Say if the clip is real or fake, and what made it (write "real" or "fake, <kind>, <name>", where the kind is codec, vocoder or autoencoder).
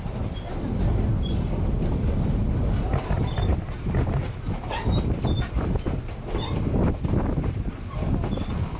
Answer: real